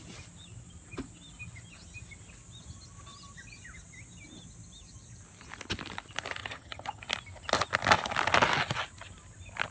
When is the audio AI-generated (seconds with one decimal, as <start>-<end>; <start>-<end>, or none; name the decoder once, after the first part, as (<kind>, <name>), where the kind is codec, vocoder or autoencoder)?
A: 6.4-7.0 (vocoder, HiFi-GAN)